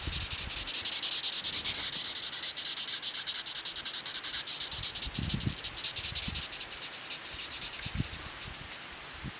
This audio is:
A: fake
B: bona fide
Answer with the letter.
B